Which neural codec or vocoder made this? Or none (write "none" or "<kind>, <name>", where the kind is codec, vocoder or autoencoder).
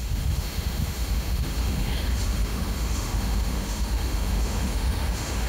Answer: autoencoder, DAC-VAE